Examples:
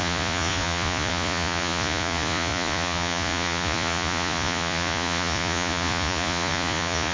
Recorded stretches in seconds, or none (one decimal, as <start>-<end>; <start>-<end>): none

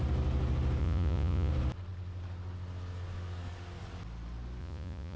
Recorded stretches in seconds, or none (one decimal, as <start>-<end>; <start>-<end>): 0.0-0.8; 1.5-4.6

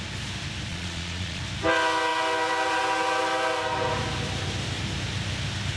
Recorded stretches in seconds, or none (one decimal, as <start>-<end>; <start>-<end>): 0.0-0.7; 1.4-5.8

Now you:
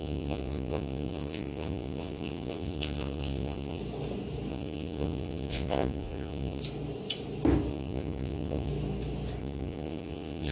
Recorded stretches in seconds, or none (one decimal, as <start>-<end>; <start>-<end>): 3.8-4.5; 6.6-7.7; 8.7-9.4

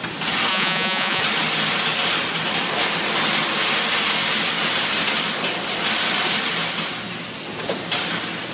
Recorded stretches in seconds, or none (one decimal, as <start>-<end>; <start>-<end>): 0.0-0.5; 1.2-8.5

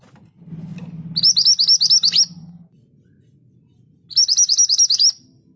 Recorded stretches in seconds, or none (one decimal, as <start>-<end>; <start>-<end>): 0.0-5.6

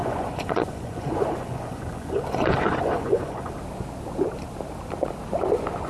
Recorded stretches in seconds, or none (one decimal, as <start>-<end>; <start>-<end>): 3.5-5.9